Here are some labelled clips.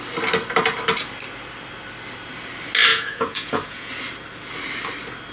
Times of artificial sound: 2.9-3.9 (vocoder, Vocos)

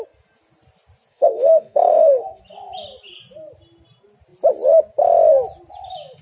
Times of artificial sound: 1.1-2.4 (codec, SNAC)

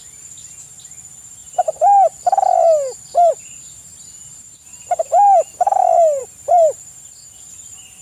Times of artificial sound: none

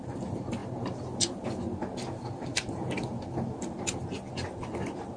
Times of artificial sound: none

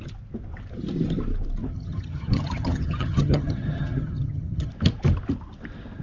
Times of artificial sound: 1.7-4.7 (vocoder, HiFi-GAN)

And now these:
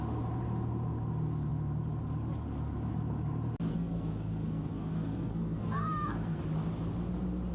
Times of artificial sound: 3.7-6.4 (codec, SNAC)